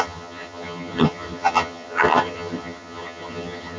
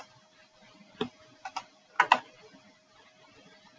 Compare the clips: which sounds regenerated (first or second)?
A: first